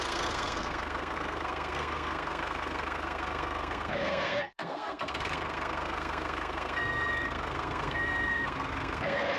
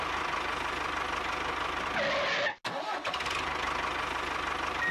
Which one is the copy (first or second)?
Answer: first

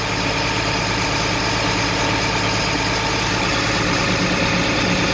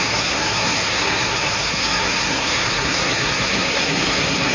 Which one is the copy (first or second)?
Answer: second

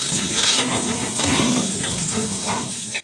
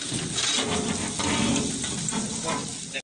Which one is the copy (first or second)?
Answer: first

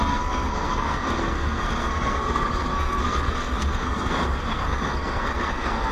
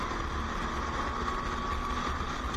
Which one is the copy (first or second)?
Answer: first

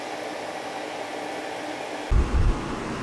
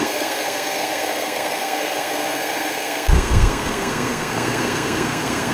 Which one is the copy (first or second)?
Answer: second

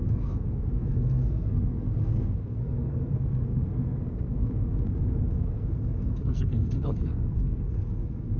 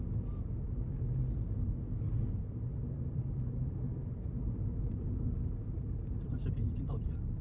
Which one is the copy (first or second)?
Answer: first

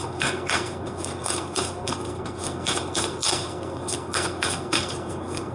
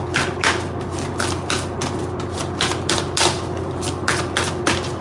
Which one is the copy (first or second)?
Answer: first